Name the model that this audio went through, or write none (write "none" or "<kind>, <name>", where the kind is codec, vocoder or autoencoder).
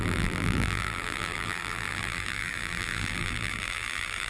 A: vocoder, BigVGAN v2